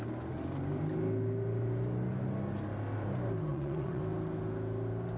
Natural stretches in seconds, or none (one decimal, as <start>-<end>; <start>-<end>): 0.0-3.5; 4.0-5.2